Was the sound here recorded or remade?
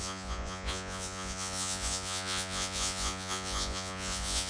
remade